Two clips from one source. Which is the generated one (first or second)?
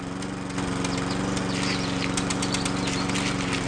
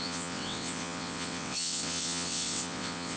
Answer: second